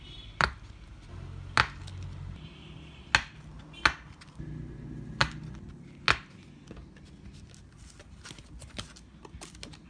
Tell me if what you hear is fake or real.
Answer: real